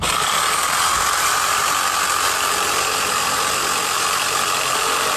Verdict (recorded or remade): recorded